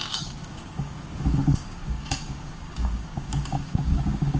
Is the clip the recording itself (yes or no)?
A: no